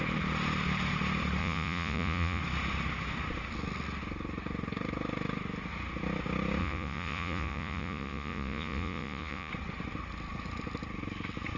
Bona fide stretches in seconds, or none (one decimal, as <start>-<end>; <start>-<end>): 0.0-1.4; 2.4-6.6; 9.5-11.6